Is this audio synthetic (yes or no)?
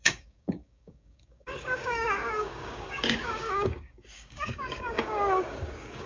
yes